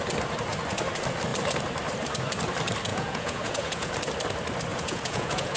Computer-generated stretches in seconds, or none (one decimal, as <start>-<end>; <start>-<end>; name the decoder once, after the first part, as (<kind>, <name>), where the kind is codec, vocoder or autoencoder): 2.9-3.9 (vocoder, Vocos); 4.7-5.6

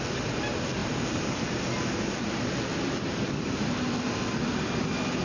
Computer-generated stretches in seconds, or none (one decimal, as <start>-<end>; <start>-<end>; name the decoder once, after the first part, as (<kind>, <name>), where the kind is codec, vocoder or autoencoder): 0.8-3.9 (vocoder, BigVGAN v2)